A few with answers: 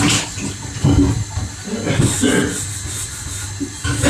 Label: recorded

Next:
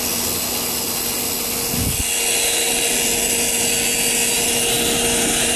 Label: recorded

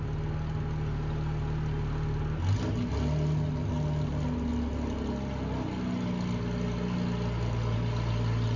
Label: recorded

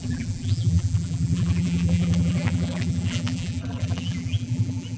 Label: remade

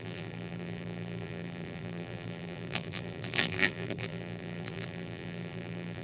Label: remade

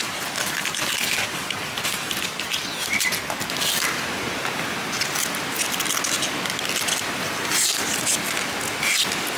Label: recorded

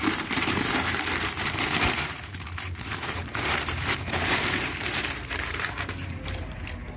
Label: remade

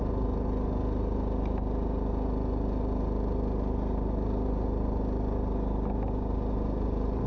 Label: recorded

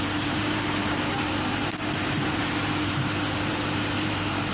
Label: remade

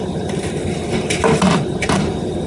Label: remade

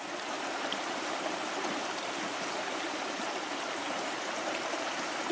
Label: remade